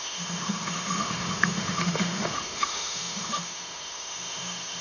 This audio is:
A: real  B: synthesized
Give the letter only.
B